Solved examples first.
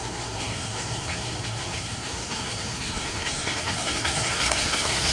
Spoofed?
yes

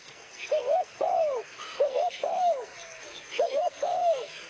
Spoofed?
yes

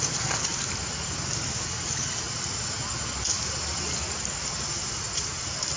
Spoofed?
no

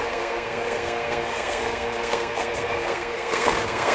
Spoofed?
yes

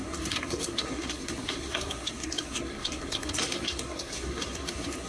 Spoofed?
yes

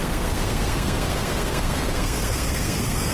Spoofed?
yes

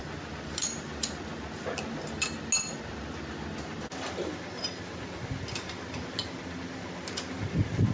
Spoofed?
no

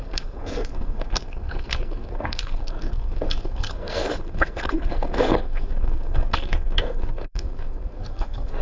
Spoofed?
yes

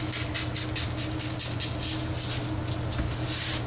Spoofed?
no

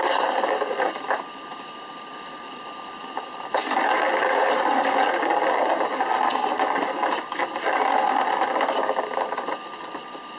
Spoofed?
no